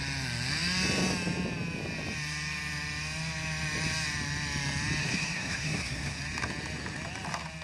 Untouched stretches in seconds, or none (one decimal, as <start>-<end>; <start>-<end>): 0.0-5.0; 6.2-7.6